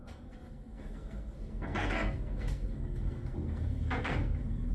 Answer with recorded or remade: remade